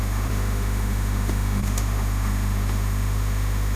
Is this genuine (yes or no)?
no